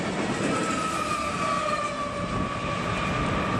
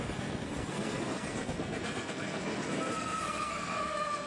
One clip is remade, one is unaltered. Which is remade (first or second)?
second